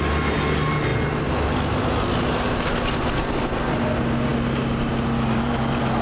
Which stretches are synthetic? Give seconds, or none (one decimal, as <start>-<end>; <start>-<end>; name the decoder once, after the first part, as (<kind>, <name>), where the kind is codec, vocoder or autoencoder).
none